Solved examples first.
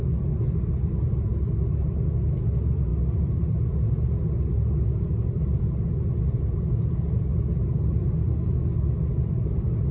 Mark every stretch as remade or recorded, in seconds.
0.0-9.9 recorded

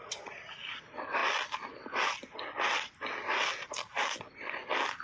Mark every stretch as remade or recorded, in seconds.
0.0-5.0 recorded

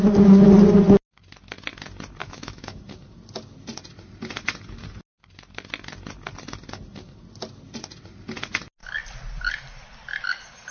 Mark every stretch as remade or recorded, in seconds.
0.0-2.2 recorded; 2.2-2.8 remade; 2.8-10.7 recorded

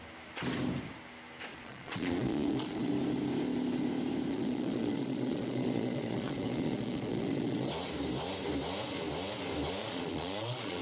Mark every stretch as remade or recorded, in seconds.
0.0-1.5 recorded; 1.5-2.9 remade; 2.9-4.3 recorded; 4.3-7.7 remade; 7.7-9.8 recorded; 9.8-10.8 remade

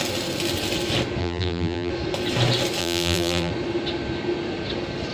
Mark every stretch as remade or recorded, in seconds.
0.0-1.2 recorded; 1.2-1.9 remade; 1.9-2.8 recorded; 2.8-3.5 remade; 3.5-5.1 recorded